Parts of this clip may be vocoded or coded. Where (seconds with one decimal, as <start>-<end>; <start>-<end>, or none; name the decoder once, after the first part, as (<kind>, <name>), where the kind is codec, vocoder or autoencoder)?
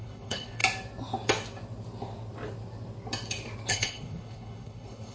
0.0-0.6 (codec, HILCodec); 3.7-5.1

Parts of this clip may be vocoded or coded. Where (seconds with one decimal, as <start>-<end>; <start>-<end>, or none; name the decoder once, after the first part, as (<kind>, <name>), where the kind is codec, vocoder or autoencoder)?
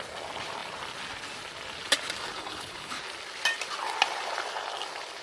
2.3-3.0 (codec, HILCodec)